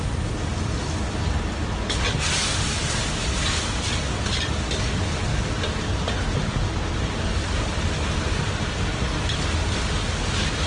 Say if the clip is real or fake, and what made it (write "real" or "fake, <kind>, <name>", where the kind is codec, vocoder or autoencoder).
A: real